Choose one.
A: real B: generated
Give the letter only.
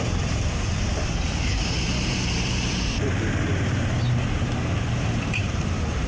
B